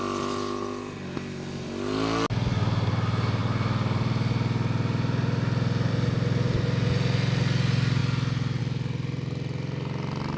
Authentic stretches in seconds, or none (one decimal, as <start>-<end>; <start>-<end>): 0.0-10.4